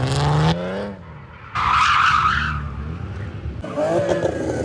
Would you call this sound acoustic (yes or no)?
yes